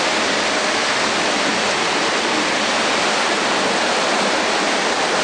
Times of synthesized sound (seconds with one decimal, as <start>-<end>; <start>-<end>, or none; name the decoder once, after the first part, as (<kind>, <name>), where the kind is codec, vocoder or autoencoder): none